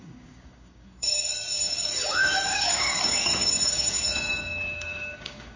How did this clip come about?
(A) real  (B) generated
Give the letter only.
B